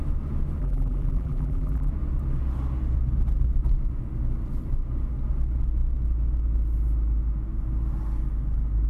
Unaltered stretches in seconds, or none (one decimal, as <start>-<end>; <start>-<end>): 0.0-0.6; 1.9-8.9